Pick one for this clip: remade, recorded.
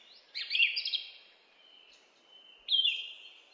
recorded